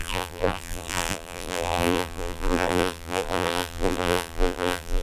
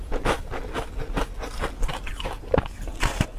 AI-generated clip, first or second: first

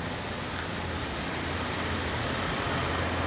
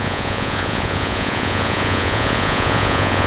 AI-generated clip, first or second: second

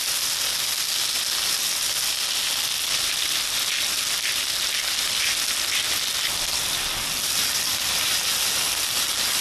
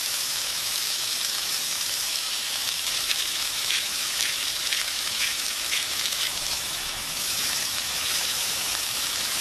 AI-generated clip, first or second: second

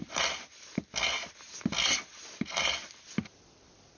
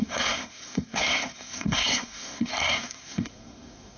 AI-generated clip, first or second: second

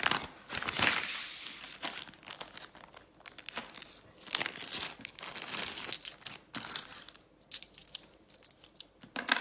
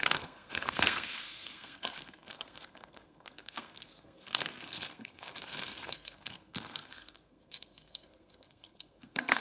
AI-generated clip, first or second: second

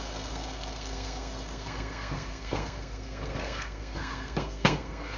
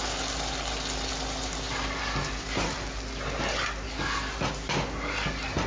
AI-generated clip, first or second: first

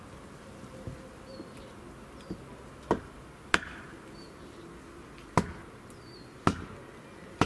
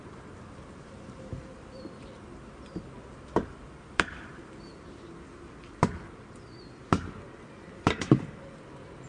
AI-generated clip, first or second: second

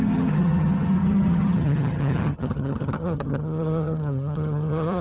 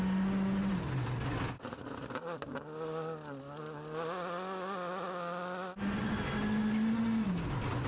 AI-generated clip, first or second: first